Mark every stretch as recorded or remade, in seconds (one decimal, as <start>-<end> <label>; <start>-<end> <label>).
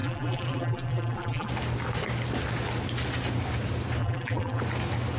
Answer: 0.0-1.5 remade; 1.5-4.0 recorded; 4.0-4.6 remade; 4.6-5.2 recorded